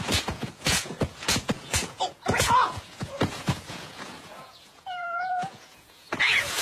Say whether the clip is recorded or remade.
remade